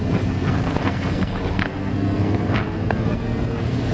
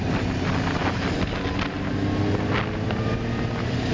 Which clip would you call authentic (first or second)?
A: second